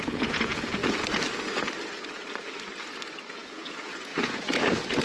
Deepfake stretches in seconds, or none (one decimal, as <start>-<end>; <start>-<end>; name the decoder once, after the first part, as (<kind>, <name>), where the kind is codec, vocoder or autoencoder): 0.0-0.8 (vocoder, Vocos); 3.3-5.0